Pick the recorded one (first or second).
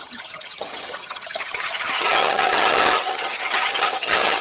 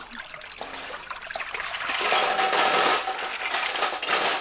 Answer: second